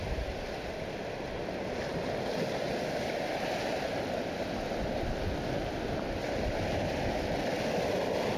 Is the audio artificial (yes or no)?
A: no